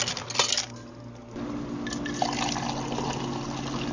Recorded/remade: recorded